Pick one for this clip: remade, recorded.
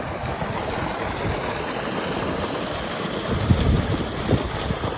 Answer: recorded